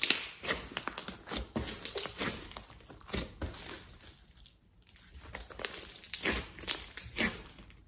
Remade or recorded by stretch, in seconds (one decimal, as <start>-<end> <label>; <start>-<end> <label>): 0.0-7.9 recorded